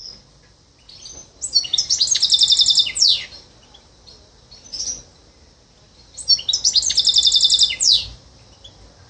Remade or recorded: recorded